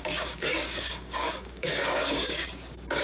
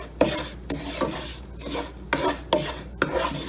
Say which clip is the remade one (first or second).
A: first